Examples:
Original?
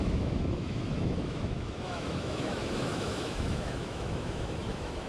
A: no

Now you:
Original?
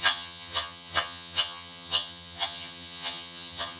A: no